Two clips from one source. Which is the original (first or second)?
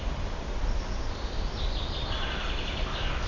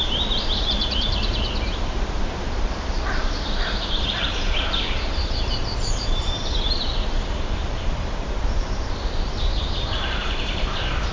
first